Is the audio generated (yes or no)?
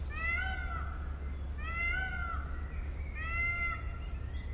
no